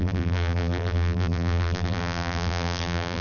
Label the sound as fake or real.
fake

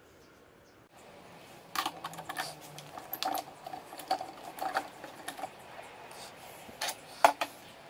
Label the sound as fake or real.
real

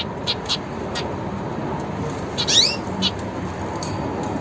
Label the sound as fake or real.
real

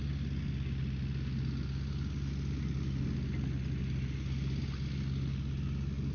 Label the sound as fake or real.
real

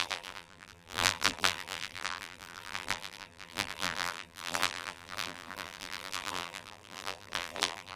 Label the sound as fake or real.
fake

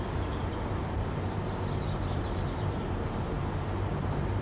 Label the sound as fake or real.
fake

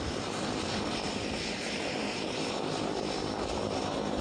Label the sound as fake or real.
real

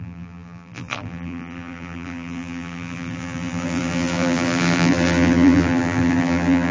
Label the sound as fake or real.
fake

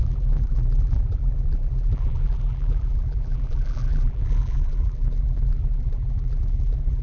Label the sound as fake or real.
fake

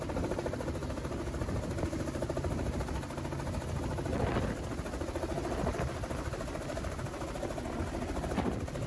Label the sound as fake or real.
real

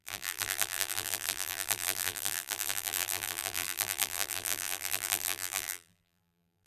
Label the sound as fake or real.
fake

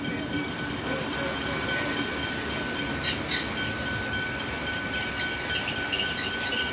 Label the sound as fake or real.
real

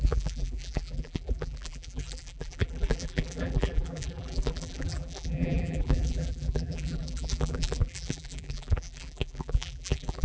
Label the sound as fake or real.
fake